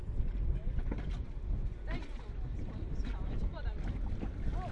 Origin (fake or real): real